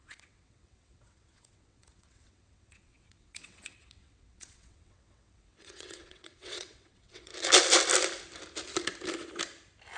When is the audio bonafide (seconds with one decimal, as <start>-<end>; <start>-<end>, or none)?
7.3-10.0